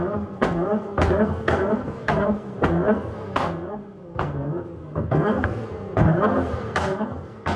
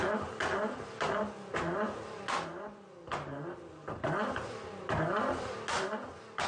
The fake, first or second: first